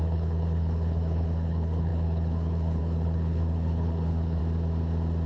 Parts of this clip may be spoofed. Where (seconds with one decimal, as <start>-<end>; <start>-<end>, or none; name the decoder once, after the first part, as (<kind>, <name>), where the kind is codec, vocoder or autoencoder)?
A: 0.0-4.4 (codec, HILCodec)